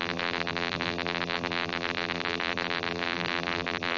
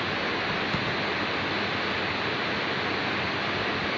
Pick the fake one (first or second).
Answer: first